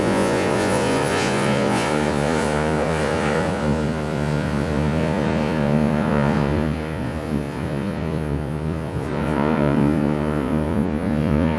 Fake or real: fake